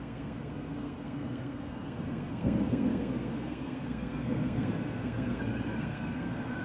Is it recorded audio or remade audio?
remade